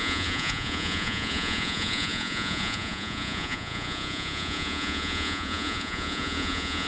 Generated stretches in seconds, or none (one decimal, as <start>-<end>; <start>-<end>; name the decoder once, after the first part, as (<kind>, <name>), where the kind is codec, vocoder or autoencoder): 0.0-6.9 (vocoder, Vocos)